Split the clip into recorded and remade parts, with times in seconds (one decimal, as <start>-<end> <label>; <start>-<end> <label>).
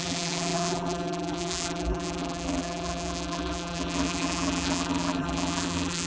0.0-6.1 remade